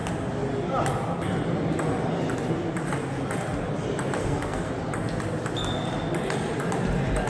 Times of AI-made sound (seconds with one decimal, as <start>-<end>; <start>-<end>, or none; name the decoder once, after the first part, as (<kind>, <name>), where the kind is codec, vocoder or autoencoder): 4.2-4.7 (codec, SNAC)